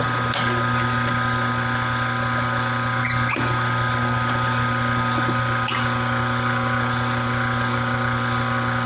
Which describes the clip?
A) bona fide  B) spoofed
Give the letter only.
A